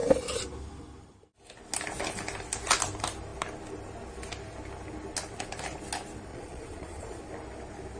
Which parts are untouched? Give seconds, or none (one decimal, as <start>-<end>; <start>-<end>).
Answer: 0.0-6.3; 7.2-8.0